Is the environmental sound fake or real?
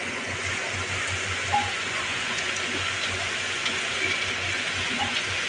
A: fake